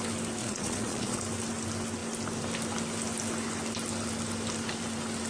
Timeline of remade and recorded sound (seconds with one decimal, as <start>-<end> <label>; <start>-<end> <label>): 0.0-0.4 recorded; 0.4-1.2 remade; 1.2-5.3 recorded